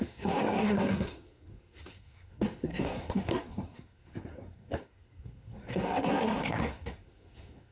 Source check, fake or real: fake